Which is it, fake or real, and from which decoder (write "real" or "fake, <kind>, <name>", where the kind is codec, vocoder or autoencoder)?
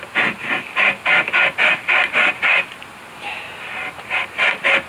real